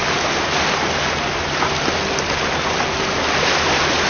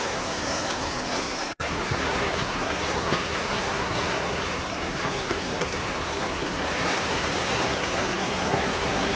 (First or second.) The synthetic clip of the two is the second